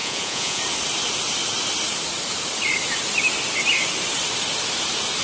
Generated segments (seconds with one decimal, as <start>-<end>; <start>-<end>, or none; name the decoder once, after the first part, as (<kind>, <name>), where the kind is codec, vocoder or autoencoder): 0.0-0.6 (vocoder, Vocos)